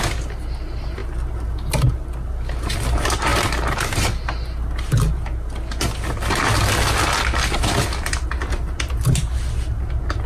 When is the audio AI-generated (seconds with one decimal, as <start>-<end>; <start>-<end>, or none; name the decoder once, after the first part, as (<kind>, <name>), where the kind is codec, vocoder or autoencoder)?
none